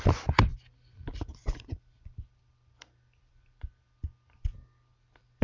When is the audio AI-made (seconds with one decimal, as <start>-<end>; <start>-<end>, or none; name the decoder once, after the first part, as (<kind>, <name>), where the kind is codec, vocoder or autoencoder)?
none